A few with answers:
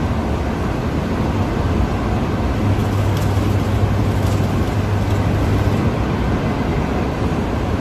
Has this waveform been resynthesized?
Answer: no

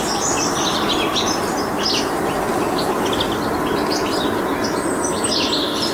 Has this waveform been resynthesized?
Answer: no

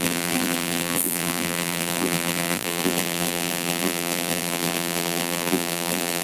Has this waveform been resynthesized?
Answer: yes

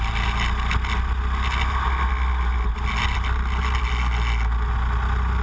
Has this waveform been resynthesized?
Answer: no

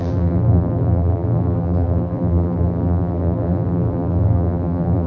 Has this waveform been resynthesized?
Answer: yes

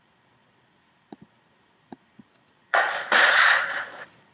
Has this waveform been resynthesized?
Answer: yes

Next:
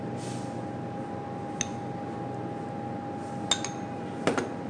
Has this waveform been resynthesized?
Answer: no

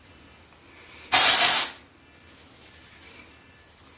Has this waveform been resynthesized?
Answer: no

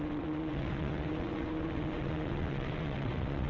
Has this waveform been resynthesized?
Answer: yes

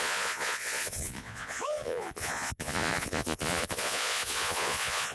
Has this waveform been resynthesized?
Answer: yes